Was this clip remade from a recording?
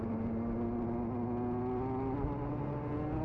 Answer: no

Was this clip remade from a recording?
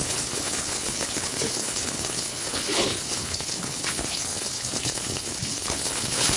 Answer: yes